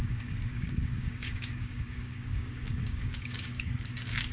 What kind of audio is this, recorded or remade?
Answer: remade